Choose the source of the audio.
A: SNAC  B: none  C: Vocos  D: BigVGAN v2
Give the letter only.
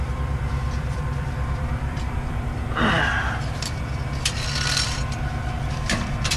D